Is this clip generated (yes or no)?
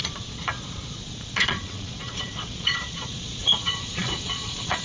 yes